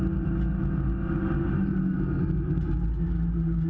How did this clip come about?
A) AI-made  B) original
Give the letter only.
B